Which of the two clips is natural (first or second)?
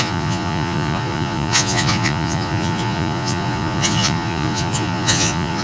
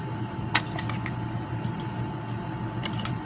second